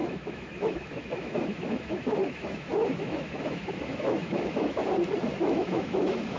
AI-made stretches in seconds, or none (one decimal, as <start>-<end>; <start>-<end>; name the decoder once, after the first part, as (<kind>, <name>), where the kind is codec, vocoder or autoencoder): 0.0-4.8 (autoencoder, DAC-VAE); 5.4-6.4